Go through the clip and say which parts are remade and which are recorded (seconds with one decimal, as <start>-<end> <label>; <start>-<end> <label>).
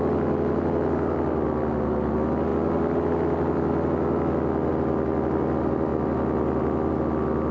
0.0-7.5 recorded